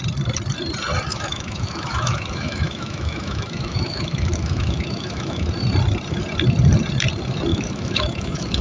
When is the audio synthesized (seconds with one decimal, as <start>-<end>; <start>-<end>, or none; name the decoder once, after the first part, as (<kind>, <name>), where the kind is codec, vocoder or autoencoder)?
1.1-5.5 (autoencoder, DAC-VAE); 7.5-8.6